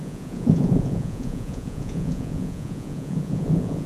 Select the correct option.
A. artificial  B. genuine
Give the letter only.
A